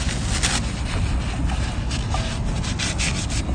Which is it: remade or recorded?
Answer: recorded